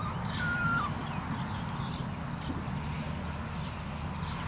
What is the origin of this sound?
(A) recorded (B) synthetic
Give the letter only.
A